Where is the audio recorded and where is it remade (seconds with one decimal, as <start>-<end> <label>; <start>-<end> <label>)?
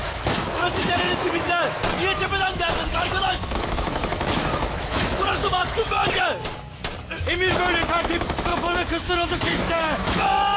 0.0-1.8 remade; 1.8-2.4 recorded; 2.4-6.0 remade; 6.0-7.9 recorded; 7.9-10.6 remade